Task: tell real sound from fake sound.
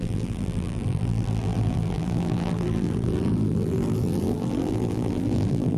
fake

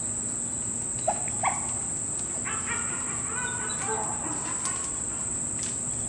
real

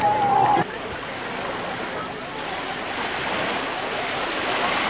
real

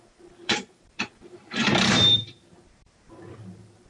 fake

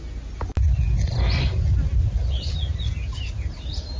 real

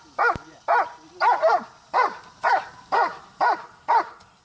real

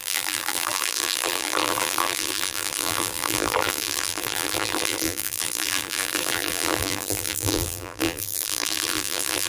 fake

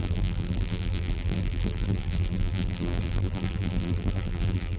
fake